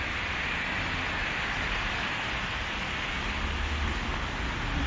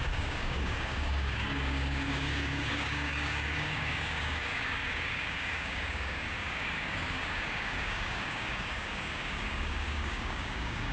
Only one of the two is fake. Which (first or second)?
second